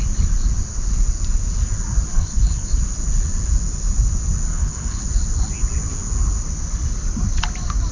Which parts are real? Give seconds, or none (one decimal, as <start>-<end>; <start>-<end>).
0.0-2.1; 2.7-4.5; 5.0-7.9